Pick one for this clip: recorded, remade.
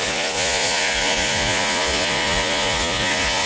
remade